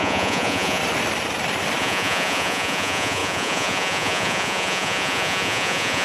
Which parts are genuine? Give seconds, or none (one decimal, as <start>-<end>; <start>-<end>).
0.8-1.8